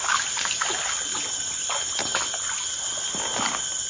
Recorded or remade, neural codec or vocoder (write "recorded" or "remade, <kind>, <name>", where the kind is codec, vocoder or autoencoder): recorded